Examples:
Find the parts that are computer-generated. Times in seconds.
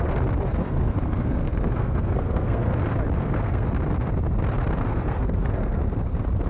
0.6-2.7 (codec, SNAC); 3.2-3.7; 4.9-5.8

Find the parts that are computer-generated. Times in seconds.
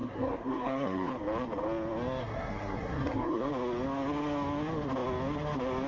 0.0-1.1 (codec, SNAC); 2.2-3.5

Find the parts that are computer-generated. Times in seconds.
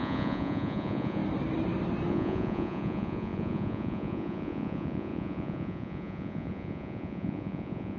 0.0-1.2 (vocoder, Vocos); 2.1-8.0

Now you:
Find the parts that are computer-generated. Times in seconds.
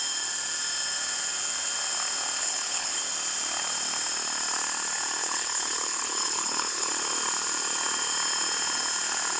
2.4-3.0 (codec, HILCodec); 5.2-6.9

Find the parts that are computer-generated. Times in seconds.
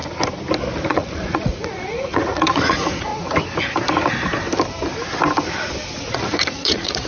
0.9-3.1 (vocoder, Vocos); 6.1-7.1